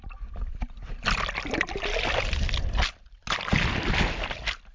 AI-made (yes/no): no